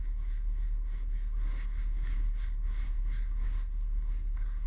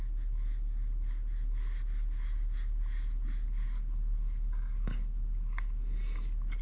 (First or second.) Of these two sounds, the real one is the second